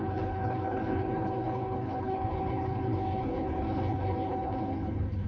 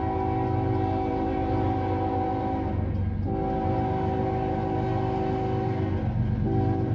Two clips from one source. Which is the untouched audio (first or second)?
second